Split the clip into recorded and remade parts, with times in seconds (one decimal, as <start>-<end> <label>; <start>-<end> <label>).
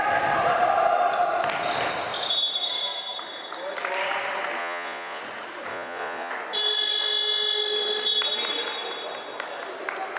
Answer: 0.0-4.6 recorded; 4.6-5.2 remade; 5.2-5.7 recorded; 5.7-6.3 remade; 6.3-10.2 recorded